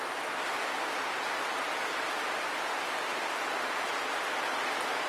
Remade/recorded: recorded